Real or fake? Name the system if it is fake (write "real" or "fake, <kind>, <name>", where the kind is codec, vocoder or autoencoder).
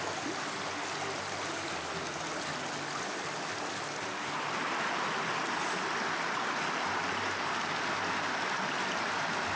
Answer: real